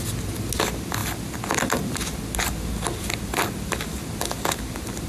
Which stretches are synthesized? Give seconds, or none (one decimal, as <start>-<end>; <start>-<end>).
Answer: none